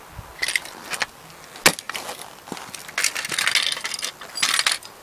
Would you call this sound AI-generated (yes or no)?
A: no